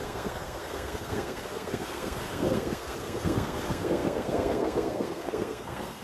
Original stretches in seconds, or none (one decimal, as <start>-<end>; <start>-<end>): none